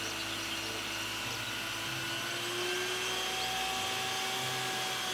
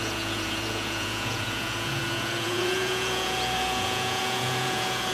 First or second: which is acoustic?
first